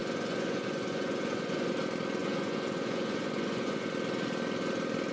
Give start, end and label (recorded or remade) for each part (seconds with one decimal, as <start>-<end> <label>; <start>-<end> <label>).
0.0-1.7 remade; 1.7-2.2 recorded; 2.2-3.9 remade; 3.9-5.1 recorded